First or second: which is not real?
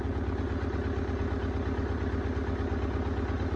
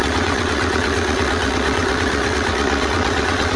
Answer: second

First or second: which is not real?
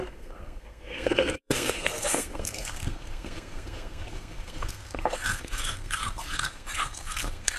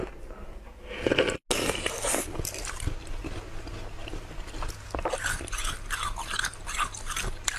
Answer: first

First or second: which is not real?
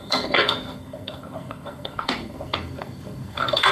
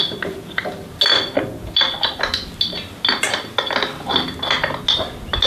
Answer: first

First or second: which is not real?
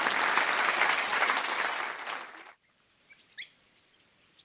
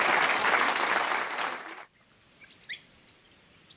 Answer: second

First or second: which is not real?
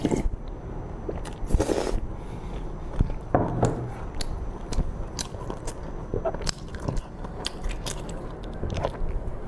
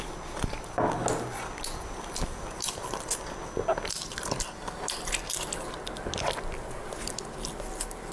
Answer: first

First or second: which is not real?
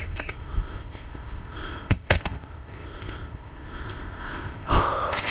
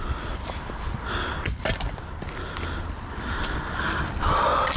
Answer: first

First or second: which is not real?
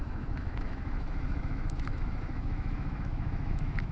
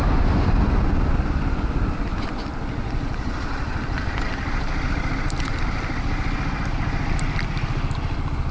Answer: first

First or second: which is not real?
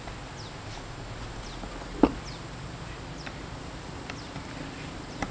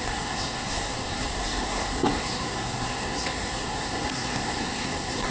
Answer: second